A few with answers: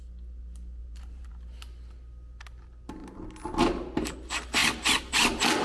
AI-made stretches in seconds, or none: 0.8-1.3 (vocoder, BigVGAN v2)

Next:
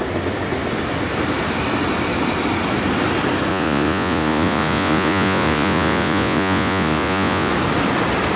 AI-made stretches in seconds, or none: 3.5-7.5 (vocoder, Vocos)

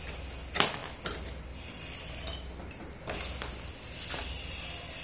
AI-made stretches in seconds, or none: none

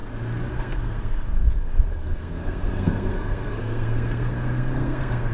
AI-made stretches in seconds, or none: 0.5-5.3 (codec, SNAC)

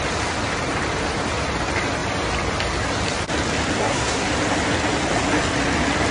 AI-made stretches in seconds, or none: 3.8-4.3 (codec, SNAC)

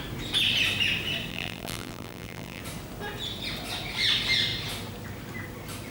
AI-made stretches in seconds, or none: 1.3-2.6 (vocoder, BigVGAN v2)